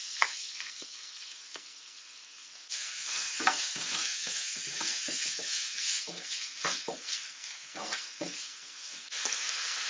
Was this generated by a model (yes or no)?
yes